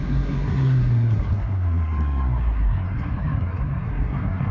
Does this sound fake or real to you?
fake